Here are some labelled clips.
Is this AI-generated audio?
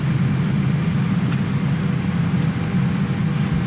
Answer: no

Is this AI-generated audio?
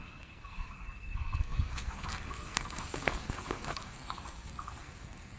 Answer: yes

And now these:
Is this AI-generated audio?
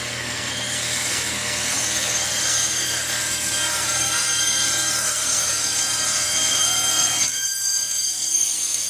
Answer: yes